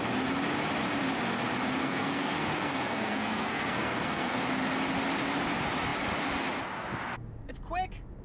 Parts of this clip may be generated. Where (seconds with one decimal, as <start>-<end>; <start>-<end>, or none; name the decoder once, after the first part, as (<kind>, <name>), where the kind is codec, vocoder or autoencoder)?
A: 1.8-4.4 (codec, SNAC)